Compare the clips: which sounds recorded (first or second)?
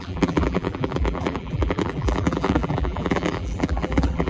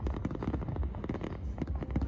second